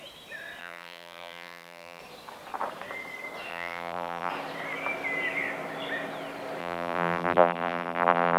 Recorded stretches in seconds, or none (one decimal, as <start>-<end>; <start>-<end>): 0.0-0.6; 2.0-3.5; 4.3-6.6